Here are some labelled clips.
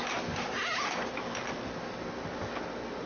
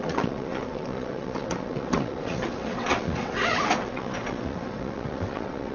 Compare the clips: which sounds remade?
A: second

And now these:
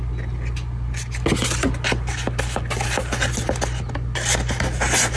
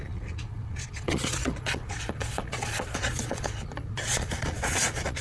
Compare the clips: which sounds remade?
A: second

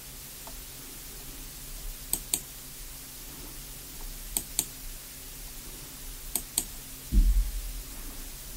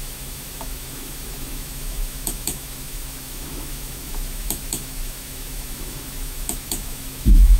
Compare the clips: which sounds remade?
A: second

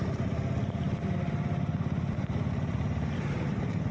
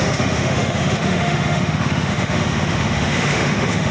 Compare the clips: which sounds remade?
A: second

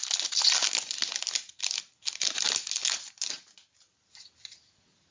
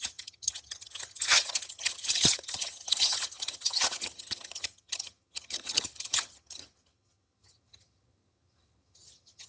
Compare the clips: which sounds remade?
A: second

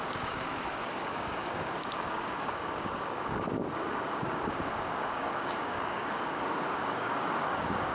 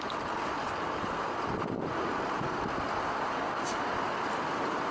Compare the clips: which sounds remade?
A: first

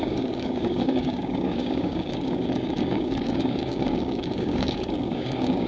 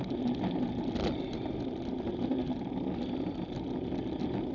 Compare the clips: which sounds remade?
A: first